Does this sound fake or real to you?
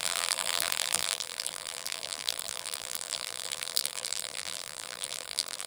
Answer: fake